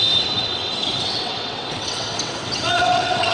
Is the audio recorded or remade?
remade